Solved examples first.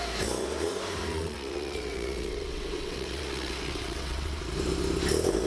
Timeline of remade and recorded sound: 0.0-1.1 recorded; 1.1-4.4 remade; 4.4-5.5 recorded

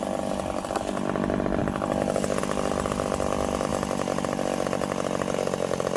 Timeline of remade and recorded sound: 0.0-6.0 recorded

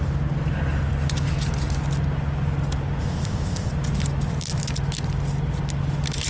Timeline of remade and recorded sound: 0.0-3.0 recorded; 3.0-3.7 remade; 3.7-6.3 recorded